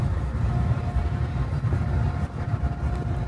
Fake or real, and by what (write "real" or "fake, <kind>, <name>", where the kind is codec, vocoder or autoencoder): fake, vocoder, BigVGAN v2